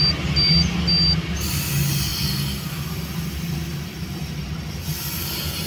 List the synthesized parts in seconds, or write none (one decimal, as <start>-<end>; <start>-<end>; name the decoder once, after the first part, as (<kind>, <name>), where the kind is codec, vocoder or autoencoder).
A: none